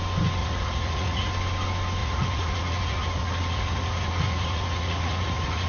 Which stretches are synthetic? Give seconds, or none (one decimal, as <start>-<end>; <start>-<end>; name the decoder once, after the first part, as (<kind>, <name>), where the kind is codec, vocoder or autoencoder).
0.4-1.3 (vocoder, Vocos); 2.0-5.7